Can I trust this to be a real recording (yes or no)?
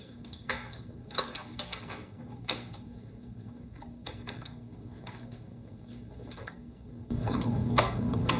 no